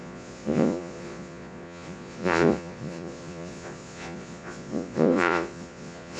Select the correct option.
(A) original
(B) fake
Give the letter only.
B